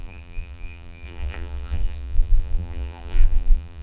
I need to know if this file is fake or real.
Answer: fake